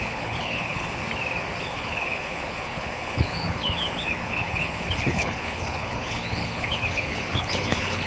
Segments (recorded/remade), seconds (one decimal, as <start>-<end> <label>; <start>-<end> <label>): 0.0-1.0 remade; 1.0-1.6 recorded; 1.6-8.1 remade